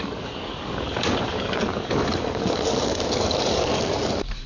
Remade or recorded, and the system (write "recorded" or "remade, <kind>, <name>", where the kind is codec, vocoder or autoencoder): remade, codec, DAC